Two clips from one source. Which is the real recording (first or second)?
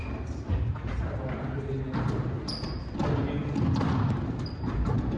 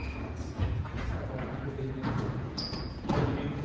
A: first